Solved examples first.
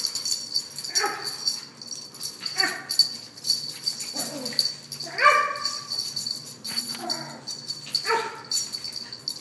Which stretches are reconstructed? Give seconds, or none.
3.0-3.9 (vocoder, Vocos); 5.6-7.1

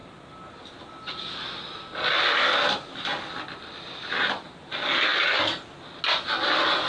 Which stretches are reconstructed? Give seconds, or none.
none

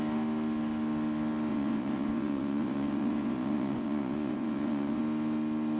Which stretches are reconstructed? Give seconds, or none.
1.5-5.0 (vocoder, Vocos)

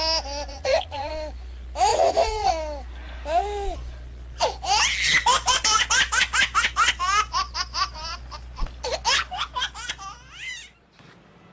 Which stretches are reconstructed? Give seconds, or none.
0.5-1.1 (vocoder, Vocos); 1.9-2.5

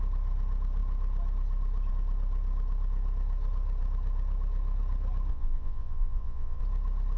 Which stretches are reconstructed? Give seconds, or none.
5.3-6.6 (vocoder, Vocos)